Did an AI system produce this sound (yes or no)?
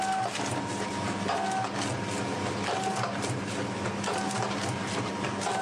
no